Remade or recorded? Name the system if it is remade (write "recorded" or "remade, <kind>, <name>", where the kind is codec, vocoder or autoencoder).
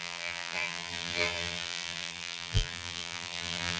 remade, vocoder, BigVGAN v2